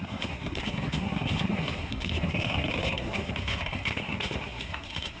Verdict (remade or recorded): remade